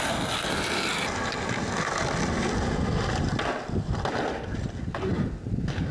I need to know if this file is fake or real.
real